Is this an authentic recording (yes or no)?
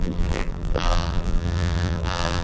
no